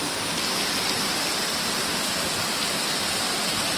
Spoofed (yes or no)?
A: no